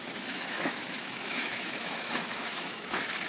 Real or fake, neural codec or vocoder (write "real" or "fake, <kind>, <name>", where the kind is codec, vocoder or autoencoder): fake, autoencoder, DAC-VAE